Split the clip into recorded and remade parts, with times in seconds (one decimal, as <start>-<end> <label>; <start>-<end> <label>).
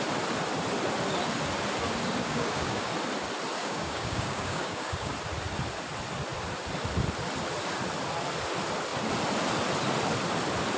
0.0-2.2 recorded; 2.2-2.9 remade; 2.9-3.6 recorded; 3.6-5.1 remade; 5.1-10.8 recorded